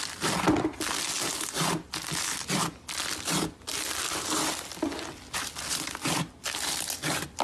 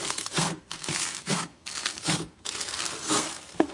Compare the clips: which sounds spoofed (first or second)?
second